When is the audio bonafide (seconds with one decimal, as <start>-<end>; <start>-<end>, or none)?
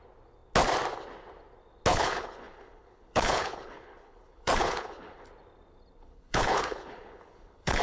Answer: 0.0-1.9; 5.3-6.0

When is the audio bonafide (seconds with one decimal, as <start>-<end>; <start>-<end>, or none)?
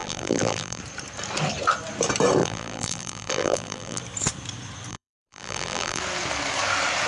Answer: 0.8-2.4; 4.0-4.9; 6.0-7.1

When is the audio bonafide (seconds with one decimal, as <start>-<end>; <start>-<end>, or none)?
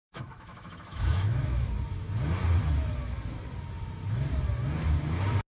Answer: 1.7-5.6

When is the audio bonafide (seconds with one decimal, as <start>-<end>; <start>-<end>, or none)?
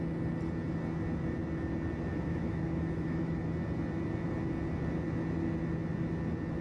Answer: 0.0-2.1; 3.4-6.6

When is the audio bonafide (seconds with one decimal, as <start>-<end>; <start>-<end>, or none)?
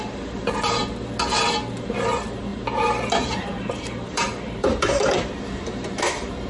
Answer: 0.8-1.7